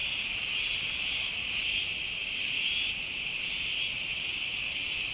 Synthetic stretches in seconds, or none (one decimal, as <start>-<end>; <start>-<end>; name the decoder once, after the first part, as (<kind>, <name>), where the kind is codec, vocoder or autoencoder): 0.0-0.6 (vocoder, BigVGAN v2); 4.1-5.1